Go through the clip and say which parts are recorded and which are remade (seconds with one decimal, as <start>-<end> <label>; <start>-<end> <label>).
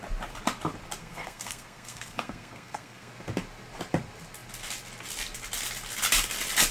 0.0-1.0 recorded; 1.0-3.1 remade; 3.1-6.7 recorded